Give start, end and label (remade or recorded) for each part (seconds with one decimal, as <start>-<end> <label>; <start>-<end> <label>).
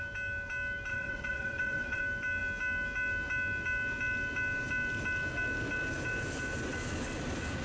0.0-0.9 recorded; 0.9-2.0 remade; 2.0-7.6 recorded